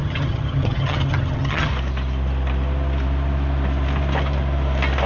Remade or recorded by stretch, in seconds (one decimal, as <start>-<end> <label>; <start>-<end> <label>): 0.0-1.7 remade; 1.7-5.1 recorded